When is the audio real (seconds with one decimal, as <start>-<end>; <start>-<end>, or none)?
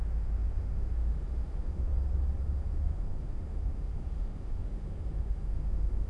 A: 1.9-2.4